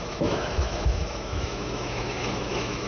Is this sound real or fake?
fake